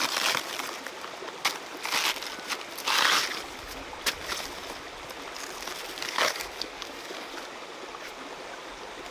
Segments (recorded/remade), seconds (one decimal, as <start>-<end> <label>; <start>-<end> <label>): 0.0-6.0 recorded; 6.0-7.3 remade; 7.3-9.1 recorded